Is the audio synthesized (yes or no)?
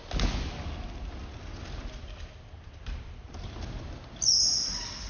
no